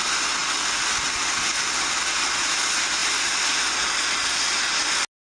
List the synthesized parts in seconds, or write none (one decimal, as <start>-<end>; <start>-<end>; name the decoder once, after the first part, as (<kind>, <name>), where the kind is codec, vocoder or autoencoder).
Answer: none